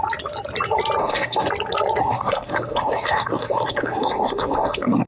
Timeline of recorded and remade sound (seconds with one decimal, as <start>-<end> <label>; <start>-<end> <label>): 0.0-1.0 recorded; 1.0-1.5 remade; 1.5-2.0 recorded; 2.0-5.1 remade